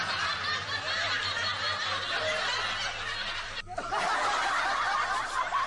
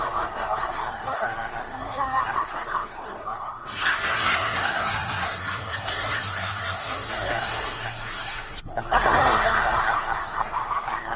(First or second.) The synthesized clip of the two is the second